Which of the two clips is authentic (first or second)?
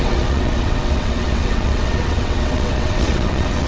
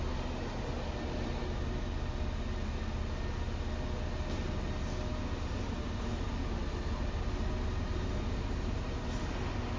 second